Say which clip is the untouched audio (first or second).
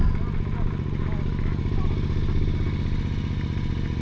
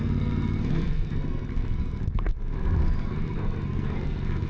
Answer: first